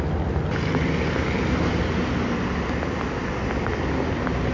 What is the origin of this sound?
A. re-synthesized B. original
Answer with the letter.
B